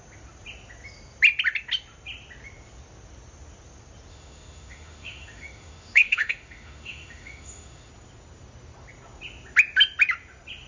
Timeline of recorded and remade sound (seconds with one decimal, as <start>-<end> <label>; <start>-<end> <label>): 0.0-4.1 recorded; 4.1-7.9 remade; 7.9-10.7 recorded